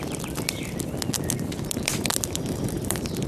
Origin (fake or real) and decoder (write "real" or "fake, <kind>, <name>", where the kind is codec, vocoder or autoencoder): real